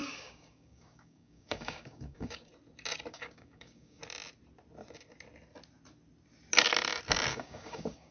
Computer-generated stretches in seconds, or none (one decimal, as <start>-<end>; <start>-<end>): 0.0-2.5; 3.1-4.0; 7.3-8.1